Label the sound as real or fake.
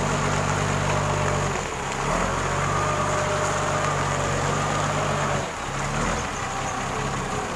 real